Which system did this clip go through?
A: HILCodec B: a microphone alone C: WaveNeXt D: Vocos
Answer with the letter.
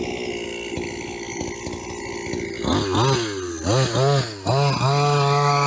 B